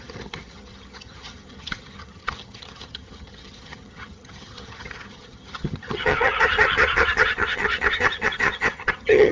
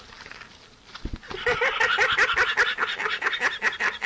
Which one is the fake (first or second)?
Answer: first